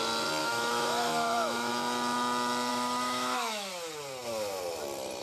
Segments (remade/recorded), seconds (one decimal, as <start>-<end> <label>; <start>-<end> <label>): 0.0-0.4 recorded; 0.4-1.7 remade; 1.7-2.7 recorded; 2.7-3.7 remade; 3.7-5.2 recorded